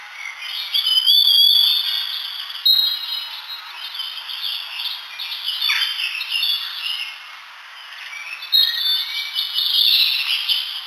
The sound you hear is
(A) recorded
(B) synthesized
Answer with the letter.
A